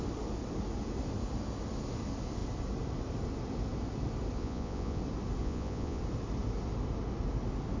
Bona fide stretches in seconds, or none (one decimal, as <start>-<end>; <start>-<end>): 0.0-4.4; 5.0-5.4; 6.0-7.8

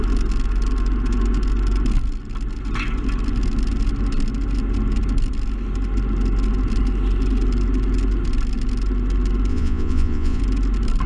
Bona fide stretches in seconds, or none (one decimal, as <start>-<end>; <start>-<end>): 0.0-9.5; 10.4-11.1

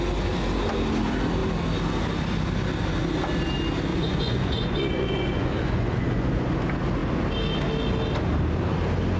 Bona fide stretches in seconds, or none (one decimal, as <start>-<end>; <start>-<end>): 0.0-3.9; 6.5-9.2

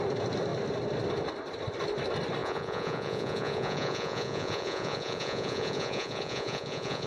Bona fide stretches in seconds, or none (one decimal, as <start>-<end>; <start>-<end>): 0.0-2.4

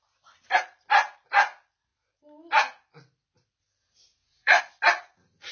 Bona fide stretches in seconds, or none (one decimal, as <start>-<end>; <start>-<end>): 0.0-4.1; 4.6-5.5

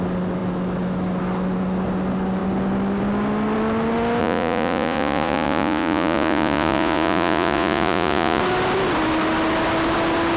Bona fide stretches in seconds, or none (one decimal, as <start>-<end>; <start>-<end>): 0.0-4.2; 8.4-10.4

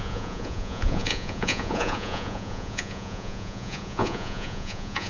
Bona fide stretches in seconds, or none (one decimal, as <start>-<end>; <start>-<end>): none